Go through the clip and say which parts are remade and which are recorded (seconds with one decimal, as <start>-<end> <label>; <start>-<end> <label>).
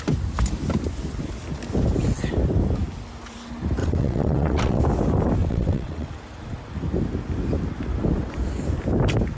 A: 0.0-3.8 recorded; 3.8-4.8 remade; 4.8-5.4 recorded; 5.4-6.1 remade; 6.1-9.4 recorded